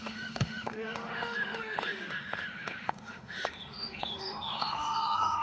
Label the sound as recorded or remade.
remade